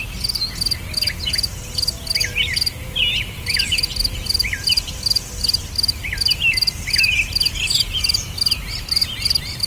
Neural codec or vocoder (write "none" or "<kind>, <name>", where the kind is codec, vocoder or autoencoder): none